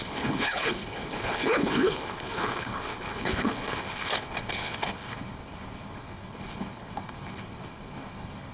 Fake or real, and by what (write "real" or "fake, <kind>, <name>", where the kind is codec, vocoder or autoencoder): fake, codec, HILCodec